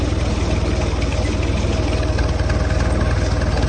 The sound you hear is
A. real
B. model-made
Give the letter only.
A